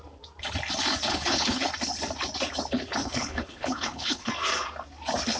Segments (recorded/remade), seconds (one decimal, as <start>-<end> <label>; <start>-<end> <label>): 0.0-1.1 recorded; 1.1-1.6 remade; 1.6-3.0 recorded; 3.0-4.3 remade; 4.3-5.4 recorded